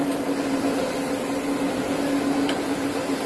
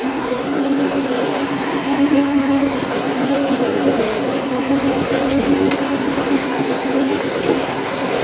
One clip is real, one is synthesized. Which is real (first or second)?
first